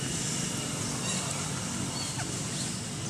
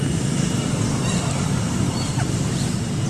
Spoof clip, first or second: second